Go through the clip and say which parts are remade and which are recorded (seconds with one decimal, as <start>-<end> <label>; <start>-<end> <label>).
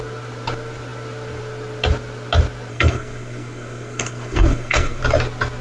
0.0-2.7 recorded; 2.7-5.0 remade; 5.0-5.6 recorded